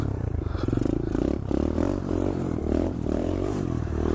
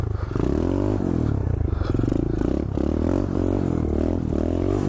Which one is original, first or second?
second